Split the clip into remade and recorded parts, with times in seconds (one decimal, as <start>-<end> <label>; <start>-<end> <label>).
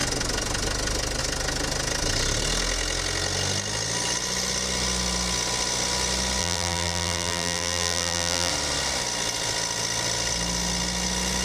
0.0-6.4 recorded; 6.4-8.5 remade; 8.5-11.4 recorded